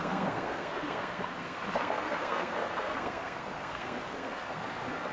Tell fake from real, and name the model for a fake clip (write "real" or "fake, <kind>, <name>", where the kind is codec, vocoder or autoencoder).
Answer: fake, codec, SNAC